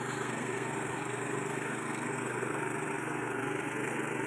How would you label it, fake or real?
fake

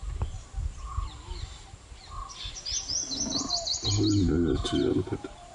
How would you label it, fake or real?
real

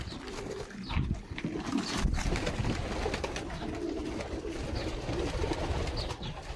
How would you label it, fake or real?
real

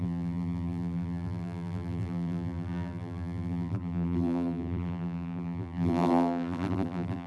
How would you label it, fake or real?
fake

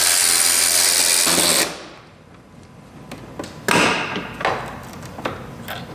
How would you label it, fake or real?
real